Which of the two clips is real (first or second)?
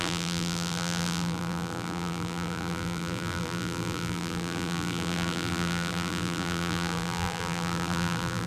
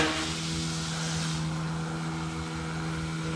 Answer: second